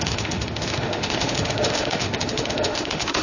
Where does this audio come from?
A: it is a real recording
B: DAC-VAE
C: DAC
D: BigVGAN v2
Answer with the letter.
B